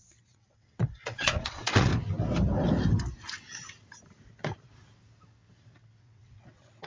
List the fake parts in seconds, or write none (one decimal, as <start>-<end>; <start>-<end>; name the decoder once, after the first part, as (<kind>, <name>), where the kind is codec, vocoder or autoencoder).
0.0-1.9 (vocoder, WaveNeXt); 6.0-6.9